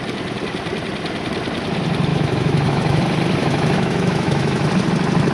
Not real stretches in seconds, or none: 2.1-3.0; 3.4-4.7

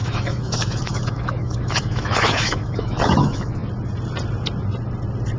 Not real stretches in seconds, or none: 0.0-3.6

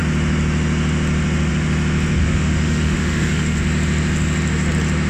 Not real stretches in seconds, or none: 2.2-3.6